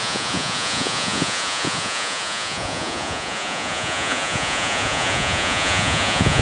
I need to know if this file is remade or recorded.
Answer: remade